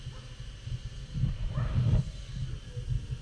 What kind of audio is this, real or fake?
real